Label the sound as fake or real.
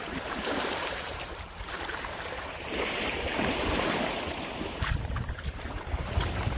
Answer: fake